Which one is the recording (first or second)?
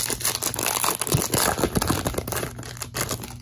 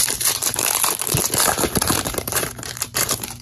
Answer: first